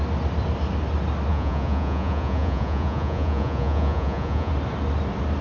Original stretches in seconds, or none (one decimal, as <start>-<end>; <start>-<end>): 0.0-1.3; 4.5-5.4